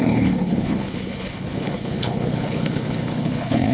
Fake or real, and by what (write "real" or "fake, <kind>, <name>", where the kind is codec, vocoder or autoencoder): fake, codec, HILCodec